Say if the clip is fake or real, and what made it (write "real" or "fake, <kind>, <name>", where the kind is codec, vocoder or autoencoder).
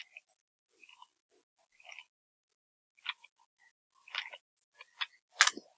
real